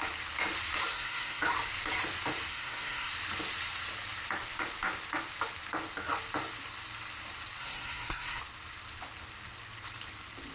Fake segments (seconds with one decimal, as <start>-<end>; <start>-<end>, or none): 0.9-1.4; 2.5-3.1; 7.6-8.4